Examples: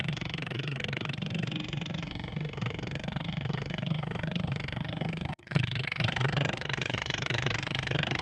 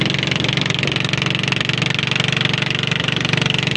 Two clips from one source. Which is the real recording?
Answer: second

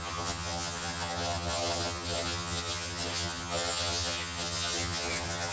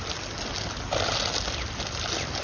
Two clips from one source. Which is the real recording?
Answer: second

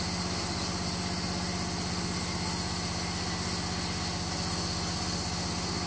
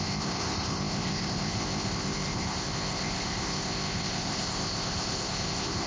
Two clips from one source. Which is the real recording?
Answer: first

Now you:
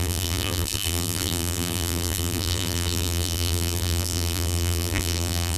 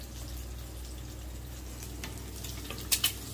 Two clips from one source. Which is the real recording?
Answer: second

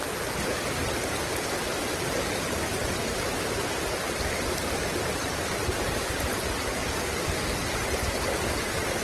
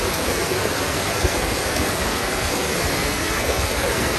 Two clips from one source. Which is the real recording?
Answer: first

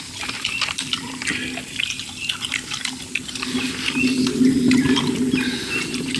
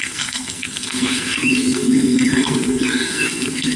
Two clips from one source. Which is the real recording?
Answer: first